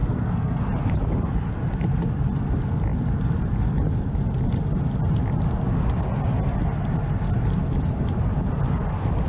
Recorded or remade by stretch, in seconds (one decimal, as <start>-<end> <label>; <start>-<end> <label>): 0.0-0.6 remade; 0.6-9.3 recorded